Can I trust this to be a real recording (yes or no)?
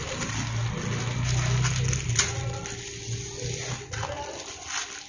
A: yes